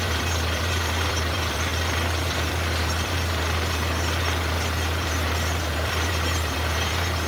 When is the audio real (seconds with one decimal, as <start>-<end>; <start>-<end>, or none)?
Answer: none